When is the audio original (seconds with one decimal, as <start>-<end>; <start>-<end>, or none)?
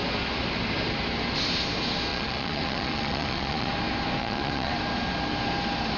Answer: 0.0-2.1; 3.7-4.2; 4.7-6.0